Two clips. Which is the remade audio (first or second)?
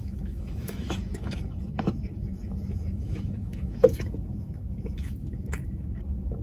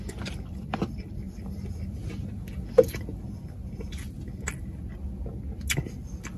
first